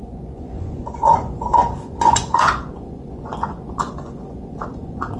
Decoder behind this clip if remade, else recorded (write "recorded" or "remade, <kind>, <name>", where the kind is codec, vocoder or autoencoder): remade, vocoder, Vocos